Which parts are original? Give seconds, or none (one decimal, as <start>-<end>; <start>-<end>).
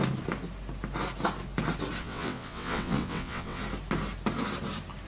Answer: 0.0-2.0; 3.6-5.1